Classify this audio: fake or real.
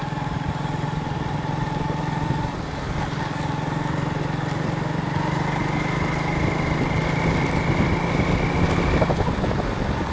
real